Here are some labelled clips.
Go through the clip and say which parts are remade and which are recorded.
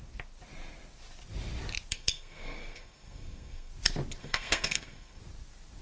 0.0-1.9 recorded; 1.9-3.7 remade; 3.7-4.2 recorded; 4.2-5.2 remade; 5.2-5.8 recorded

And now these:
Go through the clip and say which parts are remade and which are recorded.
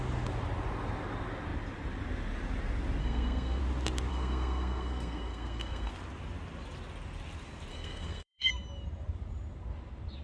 0.0-3.0 recorded; 3.0-3.6 remade; 3.6-4.1 recorded; 4.1-5.9 remade; 5.9-7.7 recorded; 7.7-8.5 remade; 8.5-10.2 recorded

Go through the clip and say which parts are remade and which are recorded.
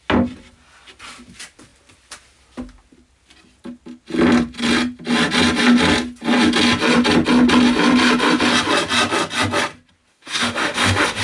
0.0-10.1 recorded; 10.1-11.2 remade